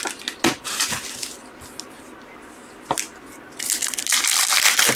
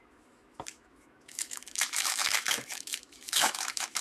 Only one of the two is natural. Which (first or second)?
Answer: first